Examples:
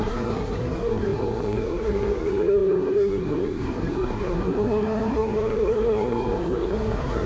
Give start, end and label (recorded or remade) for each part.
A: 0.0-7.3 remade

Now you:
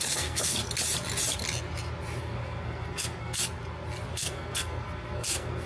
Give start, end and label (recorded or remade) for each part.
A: 0.0-0.6 remade; 0.6-2.2 recorded; 2.2-3.4 remade; 3.4-4.1 recorded; 4.1-5.7 remade